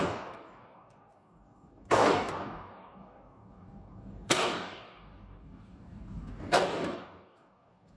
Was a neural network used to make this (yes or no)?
yes